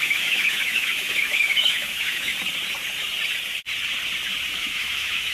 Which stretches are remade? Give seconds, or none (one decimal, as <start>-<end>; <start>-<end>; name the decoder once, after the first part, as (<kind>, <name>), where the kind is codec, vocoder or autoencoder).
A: 0.0-2.3 (autoencoder, DAC-VAE); 4.5-5.3